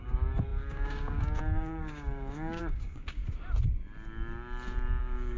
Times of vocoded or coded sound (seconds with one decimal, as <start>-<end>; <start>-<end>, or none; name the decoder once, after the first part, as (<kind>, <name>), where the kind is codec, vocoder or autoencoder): 0.0-3.2 (codec, DAC); 5.0-5.4